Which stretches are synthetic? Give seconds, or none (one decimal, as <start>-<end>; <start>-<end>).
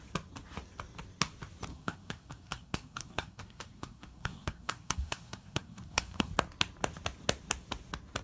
1.7-6.3